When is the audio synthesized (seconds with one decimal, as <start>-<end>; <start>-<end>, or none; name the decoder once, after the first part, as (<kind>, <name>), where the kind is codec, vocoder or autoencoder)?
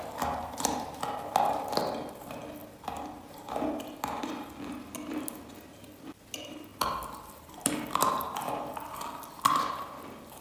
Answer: 6.7-10.4 (vocoder, BigVGAN v2)